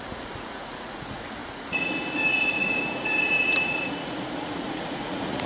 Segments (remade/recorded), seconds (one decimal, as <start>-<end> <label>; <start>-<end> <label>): 0.0-5.5 remade